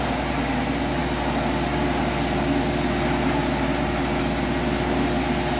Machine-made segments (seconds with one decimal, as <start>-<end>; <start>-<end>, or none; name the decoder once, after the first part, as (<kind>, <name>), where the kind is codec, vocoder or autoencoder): none